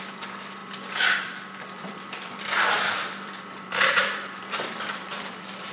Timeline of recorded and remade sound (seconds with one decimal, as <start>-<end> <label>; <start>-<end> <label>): 0.0-0.6 remade; 0.6-1.2 recorded; 1.2-5.7 remade

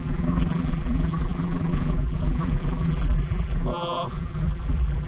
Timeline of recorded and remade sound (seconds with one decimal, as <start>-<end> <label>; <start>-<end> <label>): 0.0-5.1 remade

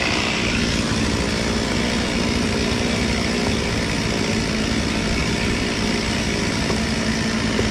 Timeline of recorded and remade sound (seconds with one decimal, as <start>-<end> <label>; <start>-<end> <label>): 0.0-5.2 recorded; 5.2-6.4 remade; 6.4-7.7 recorded

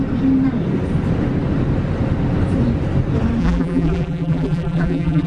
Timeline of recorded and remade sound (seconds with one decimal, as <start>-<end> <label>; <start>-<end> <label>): 0.0-3.4 recorded; 3.4-5.3 remade

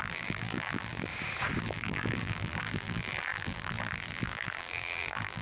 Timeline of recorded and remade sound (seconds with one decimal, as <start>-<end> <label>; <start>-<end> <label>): 0.0-1.1 remade; 1.1-1.6 recorded; 1.6-5.4 remade

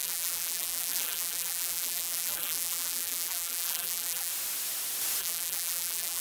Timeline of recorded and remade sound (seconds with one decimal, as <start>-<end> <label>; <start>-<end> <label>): 0.0-4.3 remade; 4.3-5.2 recorded; 5.2-6.2 remade